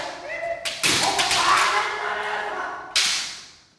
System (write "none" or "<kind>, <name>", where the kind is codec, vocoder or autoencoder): none